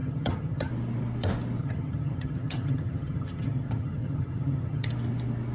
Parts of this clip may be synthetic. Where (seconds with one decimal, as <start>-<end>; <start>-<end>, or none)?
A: 0.0-0.7; 1.6-4.9